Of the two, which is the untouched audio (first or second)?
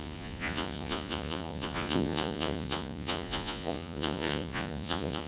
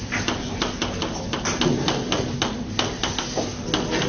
second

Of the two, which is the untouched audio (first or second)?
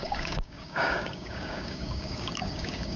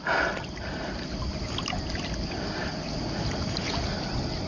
second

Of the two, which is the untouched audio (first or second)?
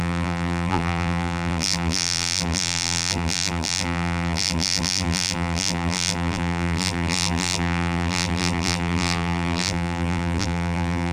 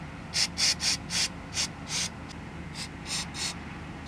second